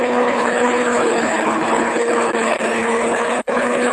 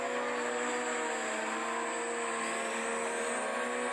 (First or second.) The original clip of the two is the second